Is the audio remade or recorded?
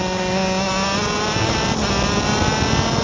recorded